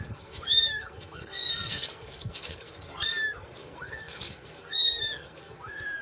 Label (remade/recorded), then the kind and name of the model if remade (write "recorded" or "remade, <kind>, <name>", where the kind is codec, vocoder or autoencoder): remade, codec, SNAC